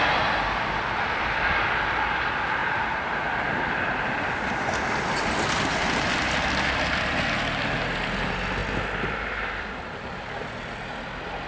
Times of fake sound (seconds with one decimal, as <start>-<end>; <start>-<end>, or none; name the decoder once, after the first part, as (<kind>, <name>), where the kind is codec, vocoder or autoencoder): none